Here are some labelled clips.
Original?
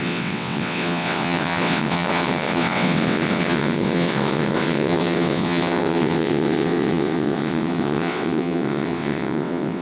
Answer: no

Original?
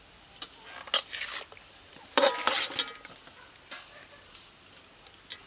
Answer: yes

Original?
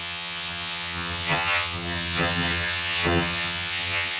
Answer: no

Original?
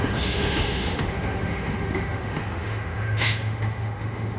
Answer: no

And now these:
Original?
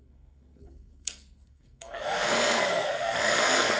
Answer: no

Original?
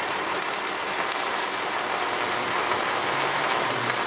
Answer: yes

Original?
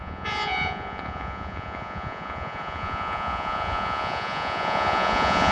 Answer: no